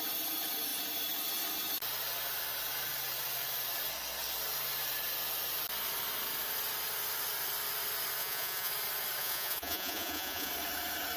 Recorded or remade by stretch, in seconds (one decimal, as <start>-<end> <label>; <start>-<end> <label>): 0.0-8.2 recorded; 8.2-8.7 remade; 8.7-9.2 recorded; 9.2-10.5 remade; 10.5-11.2 recorded